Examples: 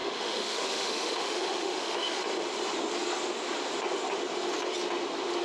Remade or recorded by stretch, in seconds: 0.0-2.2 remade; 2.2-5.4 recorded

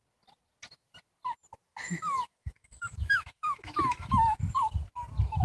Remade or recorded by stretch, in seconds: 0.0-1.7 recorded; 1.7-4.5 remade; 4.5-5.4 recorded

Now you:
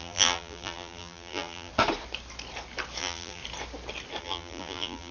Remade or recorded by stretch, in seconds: 0.0-1.7 remade; 1.7-3.0 recorded; 3.0-3.4 remade; 3.4-4.2 recorded; 4.2-5.1 remade

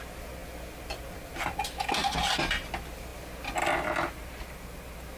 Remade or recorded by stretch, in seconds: 0.0-2.0 recorded; 2.0-2.7 remade; 2.7-5.2 recorded